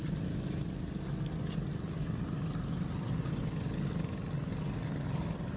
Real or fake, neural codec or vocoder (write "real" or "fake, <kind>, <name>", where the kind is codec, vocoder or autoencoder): real